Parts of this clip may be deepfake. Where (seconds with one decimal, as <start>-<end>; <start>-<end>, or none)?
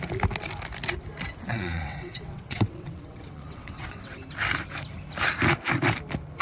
1.5-4.2